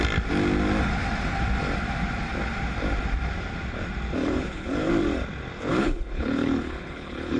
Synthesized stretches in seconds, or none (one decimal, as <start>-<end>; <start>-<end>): 4.2-4.9; 5.7-7.4

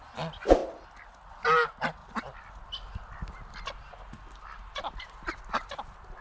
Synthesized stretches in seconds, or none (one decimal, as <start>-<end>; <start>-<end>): none

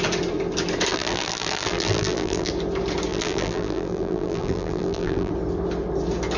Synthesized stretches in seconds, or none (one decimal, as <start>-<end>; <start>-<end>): 0.9-2.5; 3.1-5.3

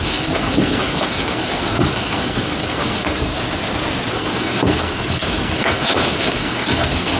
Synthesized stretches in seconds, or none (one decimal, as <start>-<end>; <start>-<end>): 0.0-3.4; 4.1-7.2